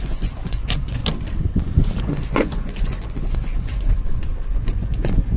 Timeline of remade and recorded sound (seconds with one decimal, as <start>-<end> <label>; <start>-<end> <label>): 0.0-1.0 remade; 1.0-2.0 recorded; 2.0-4.0 remade; 4.0-4.5 recorded; 4.5-5.4 remade